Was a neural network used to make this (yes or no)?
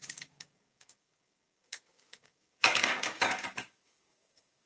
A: yes